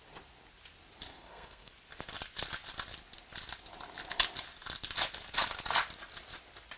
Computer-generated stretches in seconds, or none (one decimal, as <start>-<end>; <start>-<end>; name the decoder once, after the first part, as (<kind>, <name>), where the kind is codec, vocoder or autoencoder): 1.1-1.7 (codec, SNAC)